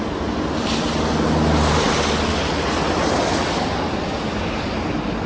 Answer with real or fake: real